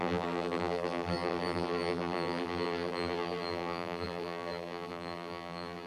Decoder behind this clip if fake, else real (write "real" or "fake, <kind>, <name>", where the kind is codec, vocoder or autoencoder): fake, vocoder, BigVGAN v2